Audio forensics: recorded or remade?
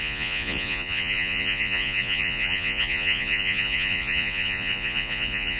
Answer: remade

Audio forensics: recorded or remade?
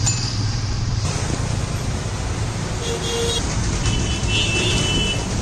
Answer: recorded